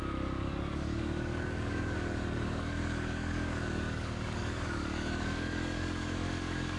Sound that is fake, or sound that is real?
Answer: fake